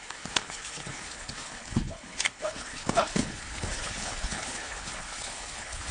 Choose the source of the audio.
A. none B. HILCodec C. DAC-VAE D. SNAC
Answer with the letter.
B